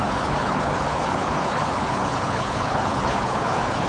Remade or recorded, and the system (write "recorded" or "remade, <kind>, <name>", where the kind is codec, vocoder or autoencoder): remade, codec, HILCodec